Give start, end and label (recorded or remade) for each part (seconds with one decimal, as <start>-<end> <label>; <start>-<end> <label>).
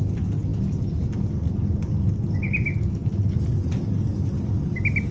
0.0-5.1 recorded